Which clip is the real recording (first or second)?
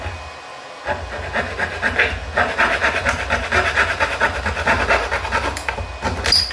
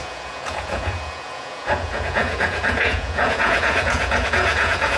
first